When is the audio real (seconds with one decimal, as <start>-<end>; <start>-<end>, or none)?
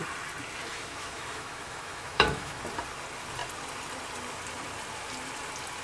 0.0-0.7; 2.6-5.8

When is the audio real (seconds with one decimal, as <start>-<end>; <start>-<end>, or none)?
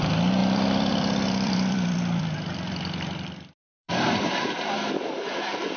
0.0-0.4; 3.9-5.8